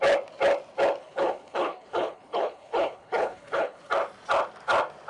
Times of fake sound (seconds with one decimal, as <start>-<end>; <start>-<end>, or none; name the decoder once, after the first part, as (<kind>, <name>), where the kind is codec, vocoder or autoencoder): 1.0-3.9 (codec, HILCodec)